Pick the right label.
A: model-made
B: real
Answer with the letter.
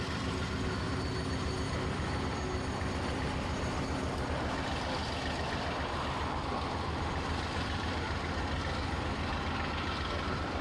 B